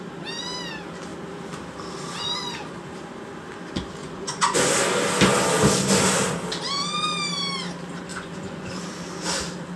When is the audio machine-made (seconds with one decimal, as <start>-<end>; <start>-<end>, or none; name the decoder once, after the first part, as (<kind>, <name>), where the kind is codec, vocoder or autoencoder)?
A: 4.0-4.7 (vocoder, Vocos); 8.1-8.8